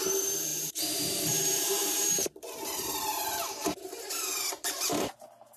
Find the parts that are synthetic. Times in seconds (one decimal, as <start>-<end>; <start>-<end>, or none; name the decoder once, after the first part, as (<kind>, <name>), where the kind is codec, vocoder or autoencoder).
0.0-5.6 (vocoder, BigVGAN v2)